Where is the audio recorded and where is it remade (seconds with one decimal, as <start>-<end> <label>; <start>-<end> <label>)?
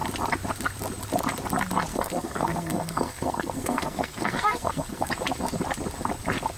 0.0-1.9 recorded; 1.9-5.1 remade; 5.1-6.6 recorded